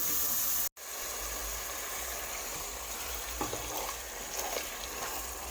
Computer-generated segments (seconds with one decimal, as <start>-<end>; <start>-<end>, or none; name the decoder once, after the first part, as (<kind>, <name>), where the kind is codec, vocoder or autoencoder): none